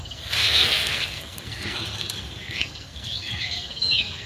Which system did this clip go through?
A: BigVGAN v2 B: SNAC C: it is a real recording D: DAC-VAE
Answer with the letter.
B